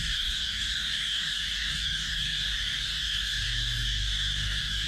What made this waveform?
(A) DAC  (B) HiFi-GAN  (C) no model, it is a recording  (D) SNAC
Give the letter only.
A